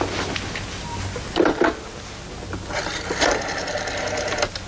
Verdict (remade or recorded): recorded